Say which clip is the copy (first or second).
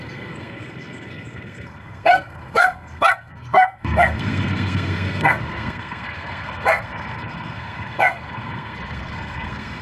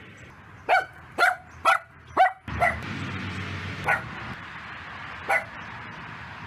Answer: first